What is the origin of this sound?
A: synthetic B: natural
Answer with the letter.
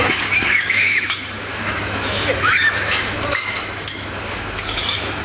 A